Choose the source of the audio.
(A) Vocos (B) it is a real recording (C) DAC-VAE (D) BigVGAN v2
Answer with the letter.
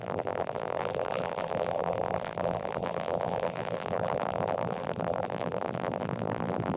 D